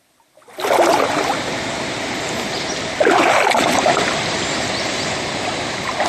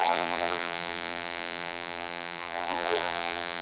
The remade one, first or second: second